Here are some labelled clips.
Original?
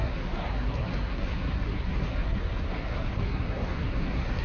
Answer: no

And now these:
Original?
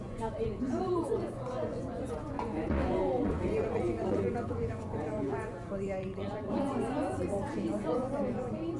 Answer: no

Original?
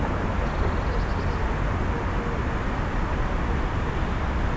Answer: yes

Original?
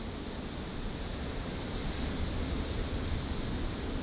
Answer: yes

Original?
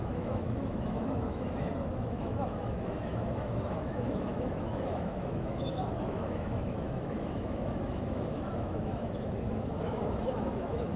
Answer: no